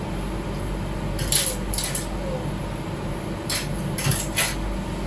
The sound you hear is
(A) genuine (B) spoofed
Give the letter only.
A